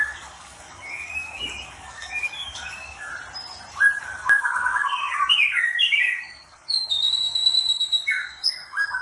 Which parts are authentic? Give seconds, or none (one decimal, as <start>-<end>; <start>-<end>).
3.1-4.0